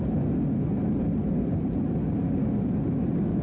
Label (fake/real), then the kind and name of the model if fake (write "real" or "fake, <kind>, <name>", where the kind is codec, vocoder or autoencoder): real